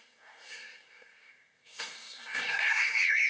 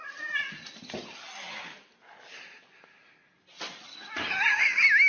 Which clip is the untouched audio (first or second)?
second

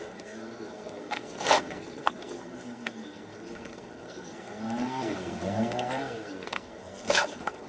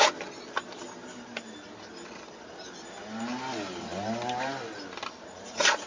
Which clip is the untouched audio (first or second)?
second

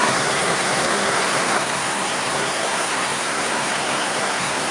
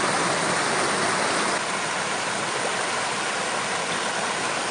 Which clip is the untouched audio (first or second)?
second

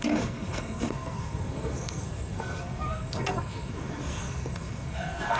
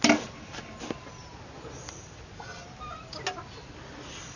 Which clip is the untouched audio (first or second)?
second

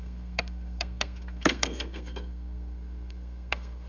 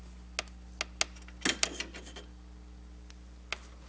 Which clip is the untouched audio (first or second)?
second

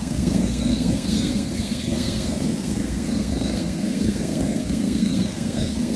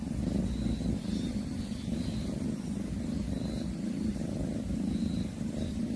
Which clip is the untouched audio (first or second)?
second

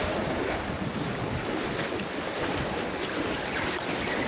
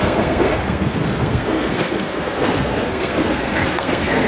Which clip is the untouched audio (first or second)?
first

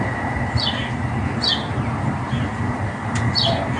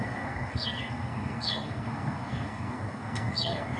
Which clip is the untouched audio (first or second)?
first